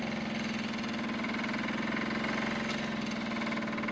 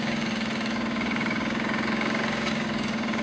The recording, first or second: first